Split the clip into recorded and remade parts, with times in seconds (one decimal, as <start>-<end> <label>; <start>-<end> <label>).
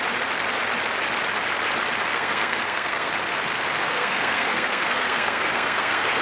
0.0-2.1 recorded; 2.1-3.1 remade; 3.1-3.8 recorded; 3.8-6.2 remade